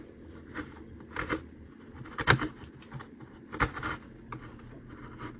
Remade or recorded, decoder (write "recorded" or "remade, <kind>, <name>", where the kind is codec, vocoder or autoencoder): recorded